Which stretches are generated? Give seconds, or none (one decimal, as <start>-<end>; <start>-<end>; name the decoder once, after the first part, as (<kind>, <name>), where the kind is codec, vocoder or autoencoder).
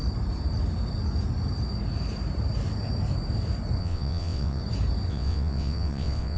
3.8-4.6 (vocoder, WaveNeXt); 5.1-6.4